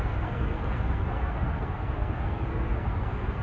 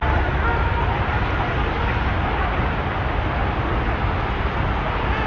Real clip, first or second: second